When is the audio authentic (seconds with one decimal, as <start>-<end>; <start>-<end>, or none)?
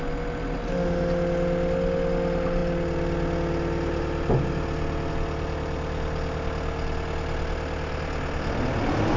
0.0-9.2